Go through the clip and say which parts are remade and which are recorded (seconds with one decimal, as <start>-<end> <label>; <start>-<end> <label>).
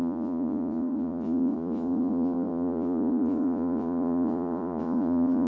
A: 0.0-5.5 remade